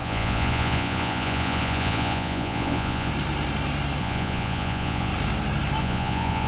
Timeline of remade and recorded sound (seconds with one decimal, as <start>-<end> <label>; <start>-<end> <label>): 0.0-3.1 remade; 3.1-4.0 recorded; 4.0-5.1 remade; 5.1-5.8 recorded; 5.8-6.5 remade